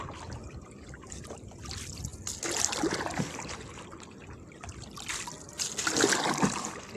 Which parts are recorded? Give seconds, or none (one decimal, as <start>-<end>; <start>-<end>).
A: 0.0-7.0

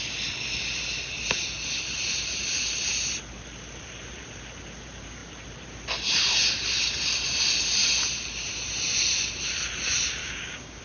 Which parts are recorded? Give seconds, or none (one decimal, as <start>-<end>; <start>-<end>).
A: 0.0-10.2